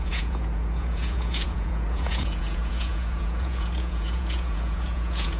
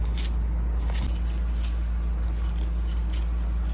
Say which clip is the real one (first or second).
second